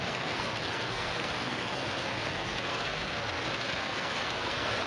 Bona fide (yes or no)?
no